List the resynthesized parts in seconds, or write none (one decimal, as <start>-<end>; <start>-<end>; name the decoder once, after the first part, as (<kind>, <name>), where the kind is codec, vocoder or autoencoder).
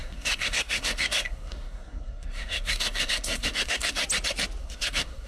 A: 0.0-4.0 (codec, SNAC); 4.6-5.3